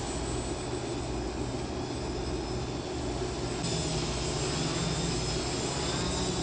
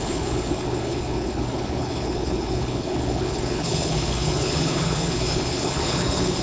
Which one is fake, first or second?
second